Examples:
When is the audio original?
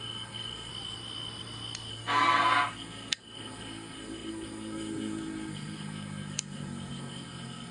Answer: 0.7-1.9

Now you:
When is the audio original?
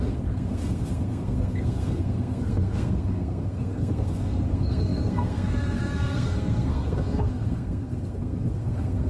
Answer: none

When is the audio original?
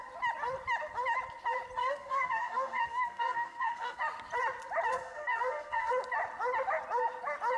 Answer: 0.0-1.8; 4.0-4.9; 5.9-7.6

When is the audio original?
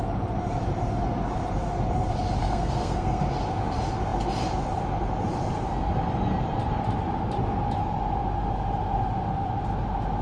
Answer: 0.0-2.4; 3.2-10.2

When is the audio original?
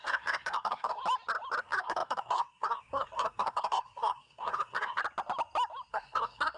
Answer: 1.0-1.6; 5.0-5.9